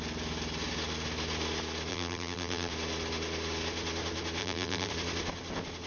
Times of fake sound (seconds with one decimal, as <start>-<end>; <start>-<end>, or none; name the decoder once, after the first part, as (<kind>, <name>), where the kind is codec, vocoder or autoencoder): 1.9-2.7 (vocoder, BigVGAN v2); 4.4-4.9